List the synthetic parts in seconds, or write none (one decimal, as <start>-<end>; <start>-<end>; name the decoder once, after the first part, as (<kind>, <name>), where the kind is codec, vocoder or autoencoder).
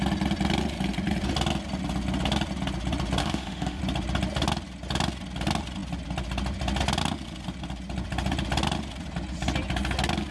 3.2-3.8 (autoencoder, DAC-VAE)